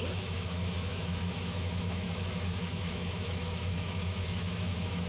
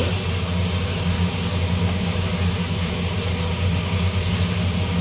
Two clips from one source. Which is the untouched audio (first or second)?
second